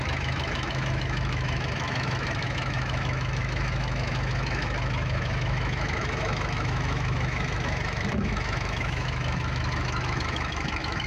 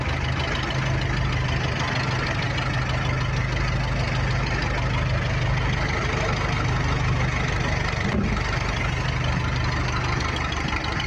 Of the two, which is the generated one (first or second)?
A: first